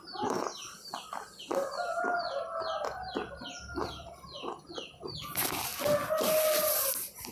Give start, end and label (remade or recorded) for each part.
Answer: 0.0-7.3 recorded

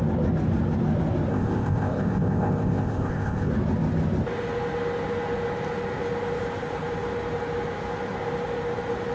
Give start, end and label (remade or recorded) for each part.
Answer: 0.0-1.3 recorded; 1.3-3.5 remade; 3.5-9.1 recorded

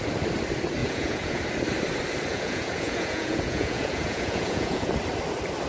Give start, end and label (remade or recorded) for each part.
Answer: 0.0-0.8 recorded; 0.8-1.4 remade; 1.4-2.3 recorded; 2.3-4.9 remade; 4.9-5.7 recorded

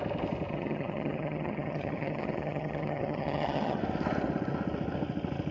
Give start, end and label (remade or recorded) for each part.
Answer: 0.0-0.5 recorded; 0.5-3.8 remade; 3.8-5.5 recorded